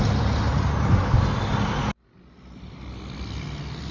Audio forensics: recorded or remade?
recorded